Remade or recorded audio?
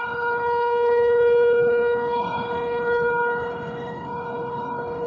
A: remade